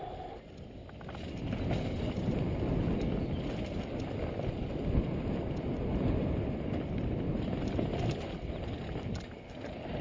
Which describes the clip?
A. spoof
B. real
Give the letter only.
B